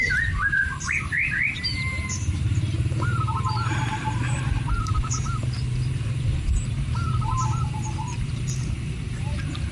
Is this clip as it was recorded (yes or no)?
no